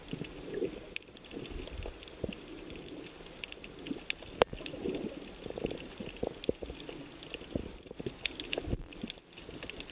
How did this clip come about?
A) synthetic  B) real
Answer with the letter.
B